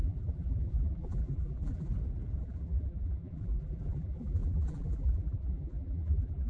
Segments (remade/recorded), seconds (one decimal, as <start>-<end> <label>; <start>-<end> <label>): 0.0-1.9 remade; 1.9-2.4 recorded; 2.4-6.5 remade